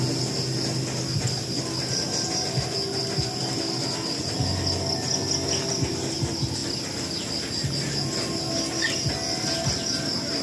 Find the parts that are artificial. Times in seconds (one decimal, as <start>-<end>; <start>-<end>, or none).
none